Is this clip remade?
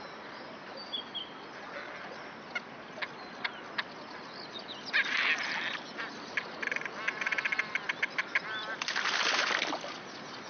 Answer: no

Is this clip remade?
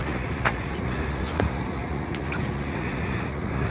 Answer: yes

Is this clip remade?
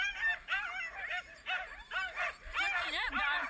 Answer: yes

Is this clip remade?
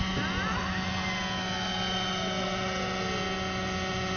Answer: no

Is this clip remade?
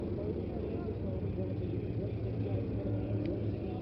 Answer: no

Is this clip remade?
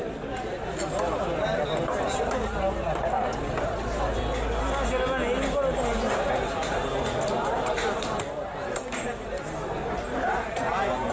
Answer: no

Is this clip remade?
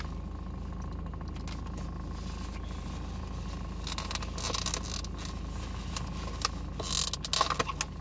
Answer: no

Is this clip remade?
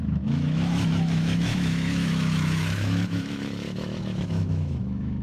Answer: yes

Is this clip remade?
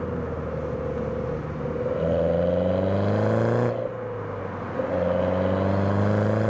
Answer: no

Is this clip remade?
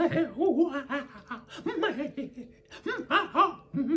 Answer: no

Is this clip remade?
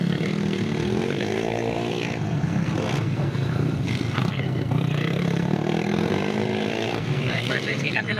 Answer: yes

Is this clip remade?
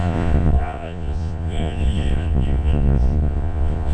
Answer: yes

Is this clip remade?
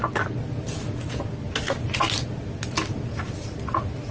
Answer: no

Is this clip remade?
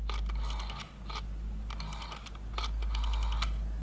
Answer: no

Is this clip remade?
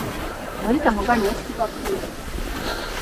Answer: yes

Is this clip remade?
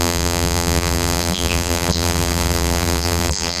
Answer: yes